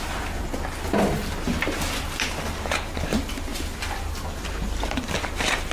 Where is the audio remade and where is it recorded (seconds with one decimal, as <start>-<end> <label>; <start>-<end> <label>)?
0.0-5.7 recorded